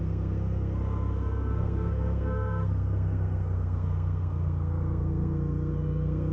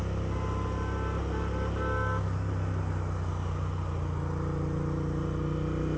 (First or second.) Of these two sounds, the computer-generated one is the first